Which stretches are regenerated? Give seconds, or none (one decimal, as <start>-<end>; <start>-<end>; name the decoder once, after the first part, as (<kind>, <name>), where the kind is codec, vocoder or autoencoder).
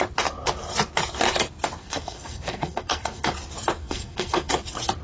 1.8-3.3 (codec, SNAC); 3.8-4.5